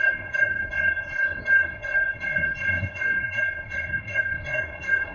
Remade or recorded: remade